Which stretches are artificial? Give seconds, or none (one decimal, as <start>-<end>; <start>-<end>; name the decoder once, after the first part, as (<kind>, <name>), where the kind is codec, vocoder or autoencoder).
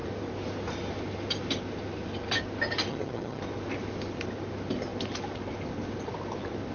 2.9-3.4 (vocoder, HiFi-GAN)